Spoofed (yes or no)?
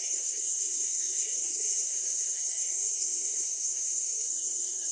yes